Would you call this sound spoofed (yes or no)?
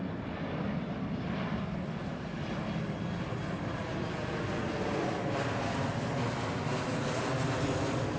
no